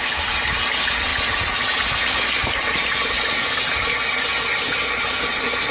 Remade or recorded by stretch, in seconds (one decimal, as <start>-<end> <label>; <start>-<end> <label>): 0.0-5.7 recorded